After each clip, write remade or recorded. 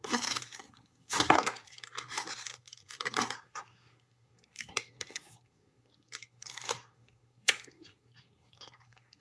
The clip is remade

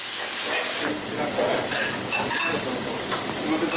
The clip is recorded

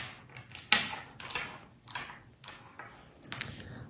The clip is recorded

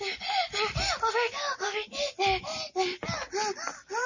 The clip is recorded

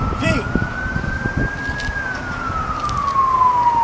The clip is recorded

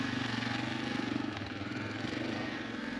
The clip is remade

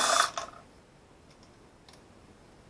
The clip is recorded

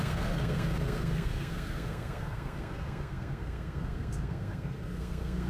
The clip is remade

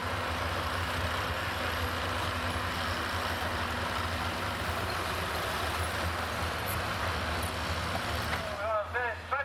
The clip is recorded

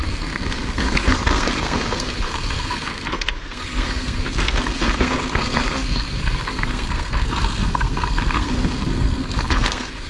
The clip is remade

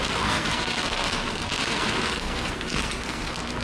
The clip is remade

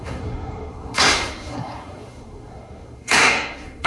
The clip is remade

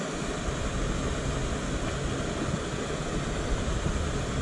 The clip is recorded